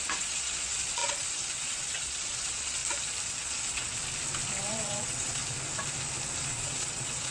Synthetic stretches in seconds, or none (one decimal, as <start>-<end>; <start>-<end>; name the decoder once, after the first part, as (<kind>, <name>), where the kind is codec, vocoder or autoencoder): 0.0-2.8 (vocoder, WaveNeXt); 3.4-3.9; 4.7-5.4; 6.5-7.3